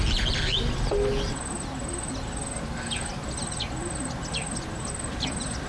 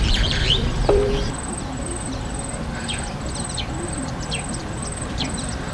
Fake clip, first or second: second